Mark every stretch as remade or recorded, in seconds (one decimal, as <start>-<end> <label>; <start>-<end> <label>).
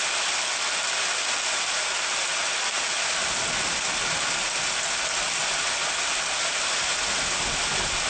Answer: 0.0-2.4 remade; 2.4-7.3 recorded; 7.3-8.1 remade